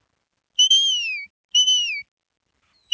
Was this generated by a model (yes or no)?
no